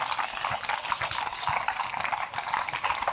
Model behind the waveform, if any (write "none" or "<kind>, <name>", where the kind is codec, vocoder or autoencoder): none